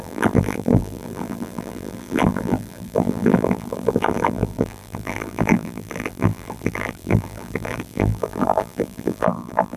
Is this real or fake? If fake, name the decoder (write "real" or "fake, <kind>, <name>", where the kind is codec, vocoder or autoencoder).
fake, vocoder, BigVGAN v2